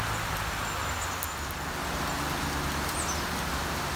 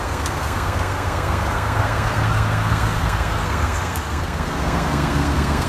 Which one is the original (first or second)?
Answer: first